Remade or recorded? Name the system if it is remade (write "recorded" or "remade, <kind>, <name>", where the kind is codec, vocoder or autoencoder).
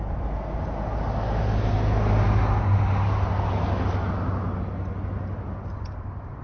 recorded